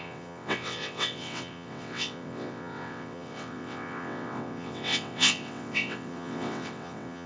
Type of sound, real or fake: fake